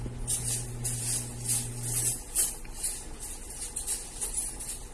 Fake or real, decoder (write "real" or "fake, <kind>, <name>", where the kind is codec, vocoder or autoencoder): real